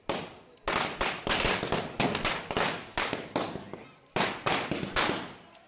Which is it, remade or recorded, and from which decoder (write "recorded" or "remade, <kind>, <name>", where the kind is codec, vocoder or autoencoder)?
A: recorded